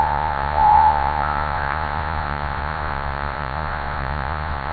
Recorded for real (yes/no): no